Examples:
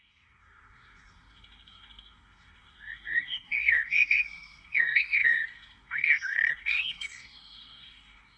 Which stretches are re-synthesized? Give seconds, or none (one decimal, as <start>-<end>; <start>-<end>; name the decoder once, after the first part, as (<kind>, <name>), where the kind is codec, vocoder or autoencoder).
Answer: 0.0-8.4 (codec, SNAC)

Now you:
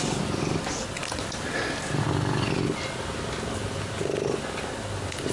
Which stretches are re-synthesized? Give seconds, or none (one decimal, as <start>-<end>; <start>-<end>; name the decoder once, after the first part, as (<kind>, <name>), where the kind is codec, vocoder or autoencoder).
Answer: none

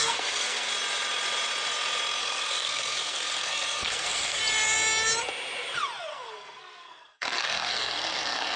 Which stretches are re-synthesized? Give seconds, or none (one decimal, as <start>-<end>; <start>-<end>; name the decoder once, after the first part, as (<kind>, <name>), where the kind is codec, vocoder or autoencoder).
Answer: 0.0-0.7 (codec, SNAC); 2.2-4.4; 6.1-8.6

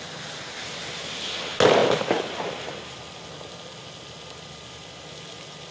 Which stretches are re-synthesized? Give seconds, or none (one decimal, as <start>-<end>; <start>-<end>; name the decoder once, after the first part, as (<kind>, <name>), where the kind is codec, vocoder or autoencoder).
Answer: none